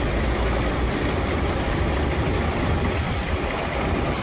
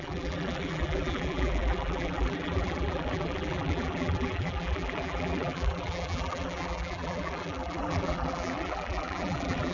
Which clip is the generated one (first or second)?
second